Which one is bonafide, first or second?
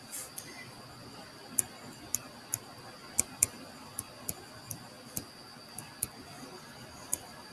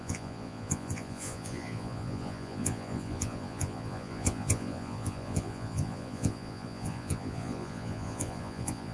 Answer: first